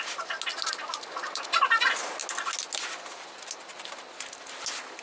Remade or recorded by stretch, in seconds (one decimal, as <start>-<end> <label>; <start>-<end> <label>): 0.0-5.0 recorded